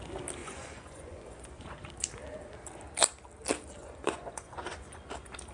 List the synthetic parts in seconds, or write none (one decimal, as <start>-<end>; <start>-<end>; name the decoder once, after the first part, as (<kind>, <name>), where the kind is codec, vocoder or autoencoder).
0.4-1.9 (vocoder, Vocos); 3.8-5.1